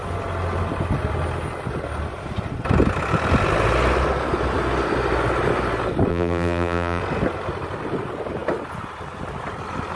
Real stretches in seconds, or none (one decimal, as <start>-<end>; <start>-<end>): 0.0-6.1; 7.0-10.0